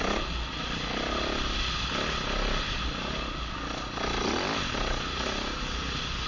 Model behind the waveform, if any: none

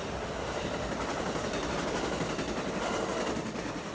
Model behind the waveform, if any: none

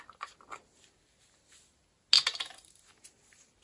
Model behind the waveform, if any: none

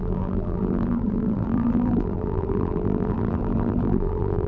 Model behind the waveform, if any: vocoder, BigVGAN v2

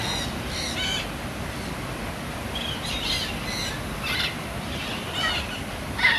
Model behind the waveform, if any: none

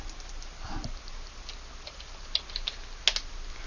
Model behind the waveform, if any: none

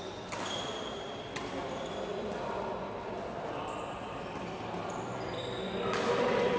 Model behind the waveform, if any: none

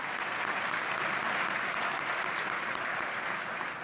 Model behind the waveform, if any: none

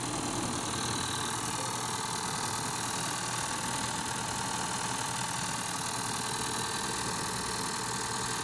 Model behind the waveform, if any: none